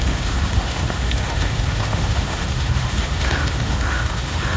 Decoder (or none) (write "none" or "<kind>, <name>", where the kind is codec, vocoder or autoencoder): autoencoder, DAC-VAE